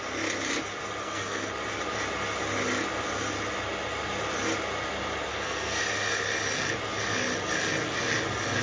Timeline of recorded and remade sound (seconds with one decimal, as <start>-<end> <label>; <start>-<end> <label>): 0.0-1.0 recorded; 1.0-1.5 remade; 1.5-5.3 recorded; 5.3-5.8 remade; 5.8-8.6 recorded